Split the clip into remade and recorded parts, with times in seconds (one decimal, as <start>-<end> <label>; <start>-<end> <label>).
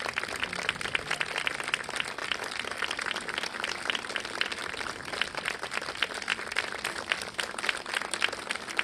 0.0-8.8 recorded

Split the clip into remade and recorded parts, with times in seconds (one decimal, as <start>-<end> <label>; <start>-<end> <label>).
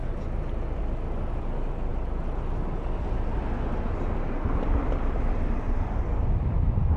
0.0-7.0 recorded